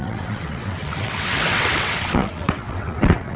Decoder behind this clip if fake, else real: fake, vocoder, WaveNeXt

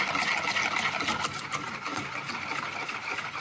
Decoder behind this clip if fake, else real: real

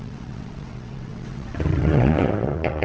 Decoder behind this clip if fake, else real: fake, vocoder, WaveNeXt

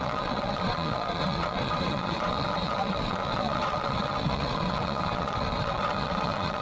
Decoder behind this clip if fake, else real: fake, vocoder, WaveNeXt